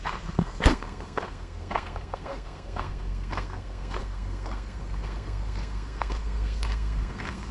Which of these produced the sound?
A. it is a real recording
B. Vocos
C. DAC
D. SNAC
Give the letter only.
D